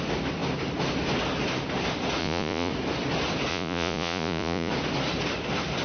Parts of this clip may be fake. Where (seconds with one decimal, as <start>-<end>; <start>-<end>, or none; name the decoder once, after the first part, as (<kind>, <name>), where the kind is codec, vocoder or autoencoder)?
2.2-2.7 (vocoder, Vocos); 3.5-4.7